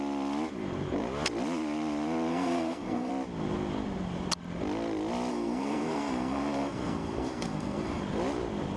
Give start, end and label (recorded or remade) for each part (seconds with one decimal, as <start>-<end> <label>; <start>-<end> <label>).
0.0-2.3 recorded; 2.3-3.1 remade; 3.1-5.3 recorded; 5.3-8.0 remade; 8.0-8.8 recorded

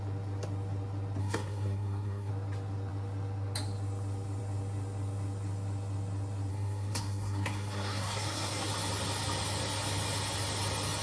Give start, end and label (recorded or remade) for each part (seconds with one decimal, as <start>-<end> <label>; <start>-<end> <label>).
0.0-1.2 recorded; 1.2-2.3 remade; 2.3-6.5 recorded; 6.5-8.7 remade; 8.7-11.0 recorded

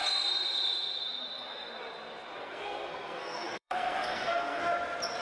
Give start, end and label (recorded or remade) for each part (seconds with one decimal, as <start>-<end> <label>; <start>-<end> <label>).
0.0-2.4 recorded; 2.4-4.6 remade; 4.6-5.2 recorded

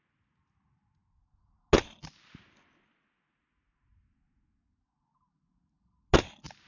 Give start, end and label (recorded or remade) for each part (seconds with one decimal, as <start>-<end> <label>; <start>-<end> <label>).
0.0-6.7 recorded

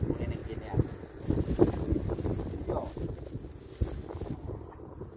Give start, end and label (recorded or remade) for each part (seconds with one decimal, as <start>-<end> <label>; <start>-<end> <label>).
0.0-5.2 recorded

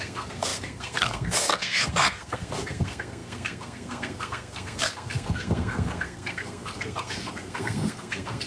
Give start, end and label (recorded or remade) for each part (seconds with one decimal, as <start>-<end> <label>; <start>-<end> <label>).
0.0-8.5 remade

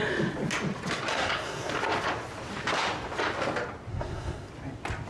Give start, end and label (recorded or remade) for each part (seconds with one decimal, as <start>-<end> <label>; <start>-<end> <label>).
0.0-1.1 recorded; 1.1-1.7 remade; 1.7-3.9 recorded; 3.9-4.5 remade; 4.5-5.1 recorded

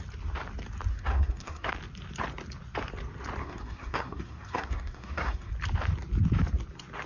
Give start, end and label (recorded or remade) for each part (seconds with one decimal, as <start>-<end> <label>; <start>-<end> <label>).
0.0-0.9 recorded; 0.9-1.7 remade; 1.7-3.4 recorded; 3.4-5.5 remade; 5.5-7.1 recorded